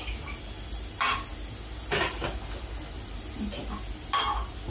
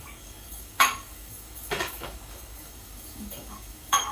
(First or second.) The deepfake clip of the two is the second